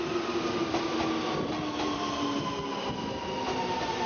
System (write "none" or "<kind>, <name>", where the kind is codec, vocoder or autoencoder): none